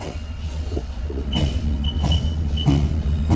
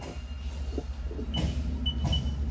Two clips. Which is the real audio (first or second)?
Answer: second